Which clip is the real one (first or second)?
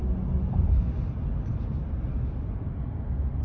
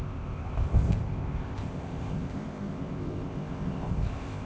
first